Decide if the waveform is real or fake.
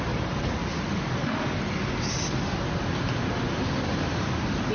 real